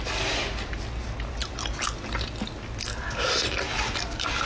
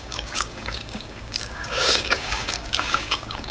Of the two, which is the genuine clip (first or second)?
first